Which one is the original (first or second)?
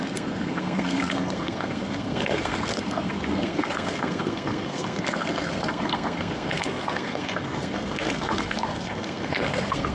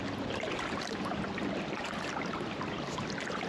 second